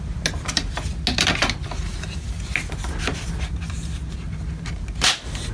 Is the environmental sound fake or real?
real